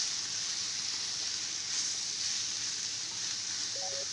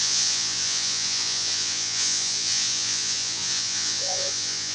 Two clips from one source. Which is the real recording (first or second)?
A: first